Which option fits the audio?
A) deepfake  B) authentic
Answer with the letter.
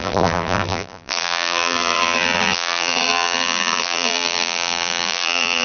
A